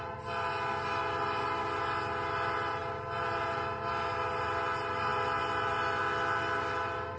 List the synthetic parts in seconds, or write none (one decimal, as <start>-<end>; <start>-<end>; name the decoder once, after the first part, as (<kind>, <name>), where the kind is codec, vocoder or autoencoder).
none